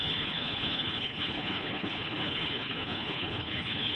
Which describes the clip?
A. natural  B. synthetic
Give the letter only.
B